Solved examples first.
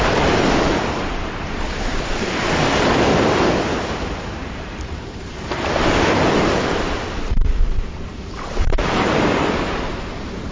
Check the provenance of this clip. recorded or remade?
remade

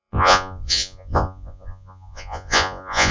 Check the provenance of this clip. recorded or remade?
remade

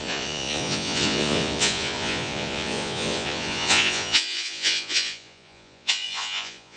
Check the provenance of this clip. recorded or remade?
remade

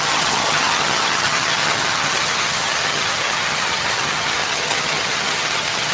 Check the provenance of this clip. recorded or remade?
remade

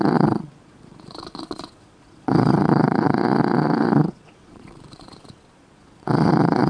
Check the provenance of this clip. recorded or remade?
remade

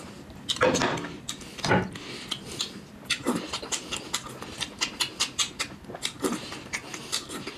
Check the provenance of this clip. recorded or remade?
recorded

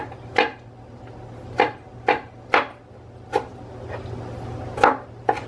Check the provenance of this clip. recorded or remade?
recorded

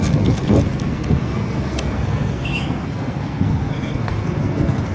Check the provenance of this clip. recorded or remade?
remade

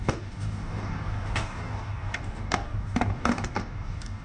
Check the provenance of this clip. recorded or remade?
remade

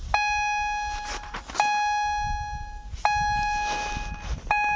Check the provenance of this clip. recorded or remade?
recorded